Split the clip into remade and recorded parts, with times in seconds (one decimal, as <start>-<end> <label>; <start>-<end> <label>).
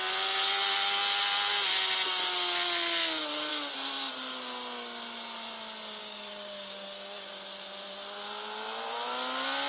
0.0-6.0 recorded; 6.0-7.3 remade; 7.3-9.7 recorded